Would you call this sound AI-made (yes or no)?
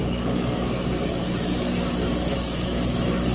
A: yes